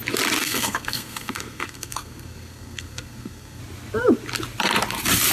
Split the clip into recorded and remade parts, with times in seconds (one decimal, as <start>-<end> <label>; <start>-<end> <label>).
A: 0.0-0.4 recorded; 0.4-3.6 remade; 3.6-5.3 recorded